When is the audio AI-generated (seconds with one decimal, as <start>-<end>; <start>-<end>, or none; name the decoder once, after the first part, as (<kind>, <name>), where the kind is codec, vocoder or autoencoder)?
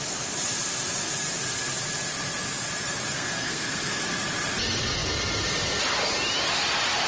3.1-4.0 (codec, SNAC)